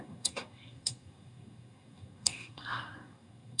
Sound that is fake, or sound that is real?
fake